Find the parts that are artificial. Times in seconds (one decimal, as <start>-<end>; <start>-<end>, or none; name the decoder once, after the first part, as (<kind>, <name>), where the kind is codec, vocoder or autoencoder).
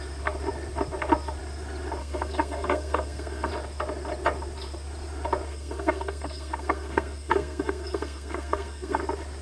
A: 2.0-3.5 (codec, SNAC); 5.5-9.0